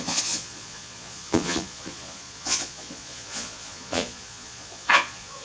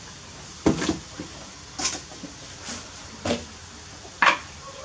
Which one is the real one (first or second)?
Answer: second